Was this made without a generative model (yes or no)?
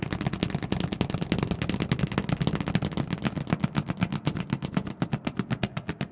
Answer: yes